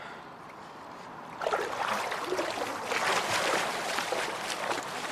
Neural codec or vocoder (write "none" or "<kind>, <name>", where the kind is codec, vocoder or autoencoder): none